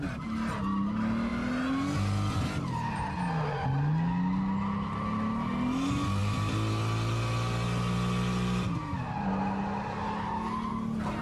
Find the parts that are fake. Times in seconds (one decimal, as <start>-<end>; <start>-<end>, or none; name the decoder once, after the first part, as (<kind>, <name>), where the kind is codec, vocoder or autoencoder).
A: none